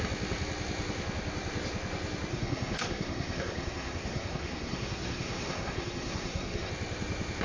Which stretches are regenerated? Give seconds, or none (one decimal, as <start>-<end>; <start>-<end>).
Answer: 2.3-6.7